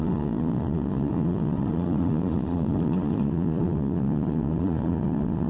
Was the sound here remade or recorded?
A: remade